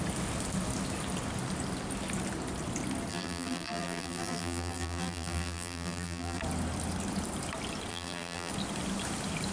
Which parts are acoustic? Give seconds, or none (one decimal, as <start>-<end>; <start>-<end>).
0.0-3.1; 6.4-7.9; 8.5-9.5